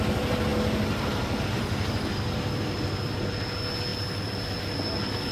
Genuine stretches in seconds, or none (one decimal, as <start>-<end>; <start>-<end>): 0.0-5.3